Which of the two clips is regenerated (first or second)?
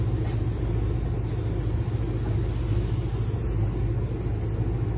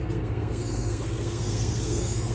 second